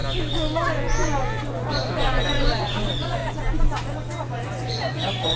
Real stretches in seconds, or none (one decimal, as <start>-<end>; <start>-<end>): 0.0-2.2; 3.2-4.3